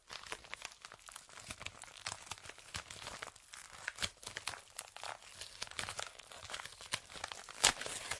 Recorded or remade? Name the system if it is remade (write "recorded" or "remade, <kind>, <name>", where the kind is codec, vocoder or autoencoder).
recorded